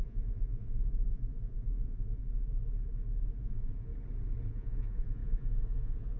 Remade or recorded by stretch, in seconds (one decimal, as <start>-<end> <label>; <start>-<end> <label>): 0.0-2.2 remade; 2.2-3.4 recorded; 3.4-3.9 remade; 3.9-4.5 recorded; 4.5-6.2 remade